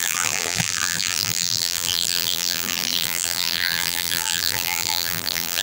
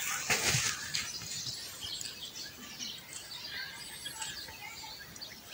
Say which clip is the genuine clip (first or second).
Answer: second